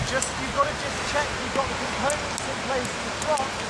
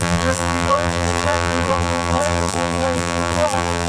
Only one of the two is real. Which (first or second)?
first